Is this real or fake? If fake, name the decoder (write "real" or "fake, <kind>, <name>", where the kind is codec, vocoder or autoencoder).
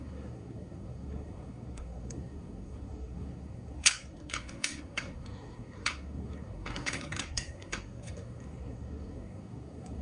fake, codec, SNAC